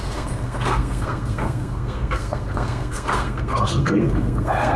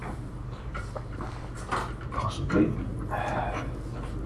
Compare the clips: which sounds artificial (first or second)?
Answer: first